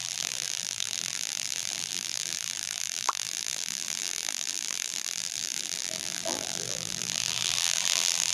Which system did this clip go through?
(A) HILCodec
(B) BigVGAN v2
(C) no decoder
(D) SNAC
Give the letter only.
B